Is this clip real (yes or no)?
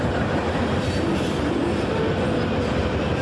yes